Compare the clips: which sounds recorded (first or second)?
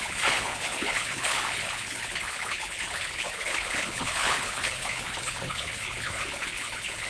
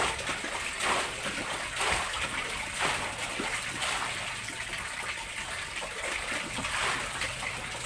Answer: second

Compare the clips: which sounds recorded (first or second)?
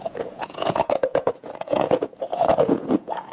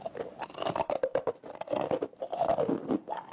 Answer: second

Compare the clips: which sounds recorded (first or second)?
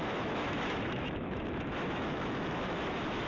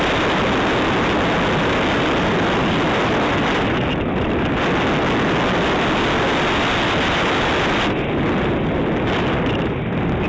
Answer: second